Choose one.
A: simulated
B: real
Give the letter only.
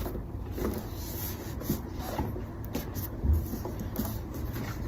B